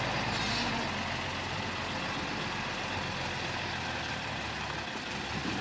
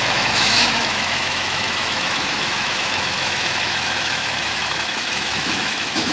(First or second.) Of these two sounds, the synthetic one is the second